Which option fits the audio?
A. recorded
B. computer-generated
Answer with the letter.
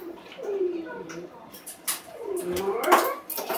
A